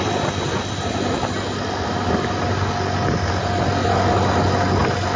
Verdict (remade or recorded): recorded